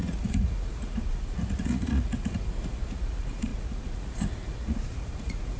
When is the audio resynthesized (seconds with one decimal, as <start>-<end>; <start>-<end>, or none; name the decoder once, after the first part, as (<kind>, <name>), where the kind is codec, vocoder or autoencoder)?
0.0-5.6 (vocoder, Vocos)